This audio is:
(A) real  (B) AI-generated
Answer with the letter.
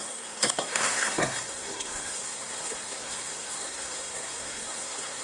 B